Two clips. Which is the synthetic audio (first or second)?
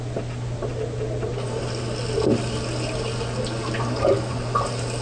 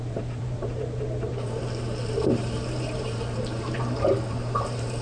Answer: second